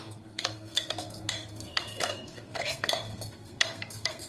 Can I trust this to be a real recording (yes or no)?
no